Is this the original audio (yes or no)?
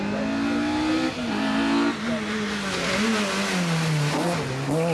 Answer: yes